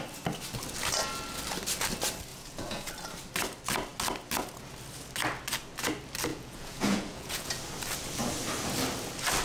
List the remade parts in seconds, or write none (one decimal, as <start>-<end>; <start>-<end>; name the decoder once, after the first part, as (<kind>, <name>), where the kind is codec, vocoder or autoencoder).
2.3-2.9 (vocoder, Vocos); 6.3-7.6